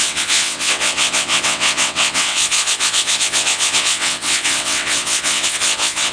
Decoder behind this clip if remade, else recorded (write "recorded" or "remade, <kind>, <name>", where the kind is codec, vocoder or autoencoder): remade, vocoder, WaveNeXt